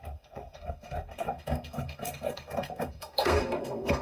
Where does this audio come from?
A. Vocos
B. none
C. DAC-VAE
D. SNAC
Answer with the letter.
D